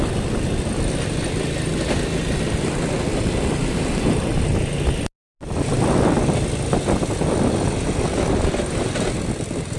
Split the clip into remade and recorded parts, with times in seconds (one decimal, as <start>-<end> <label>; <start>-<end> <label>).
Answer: 0.0-9.8 recorded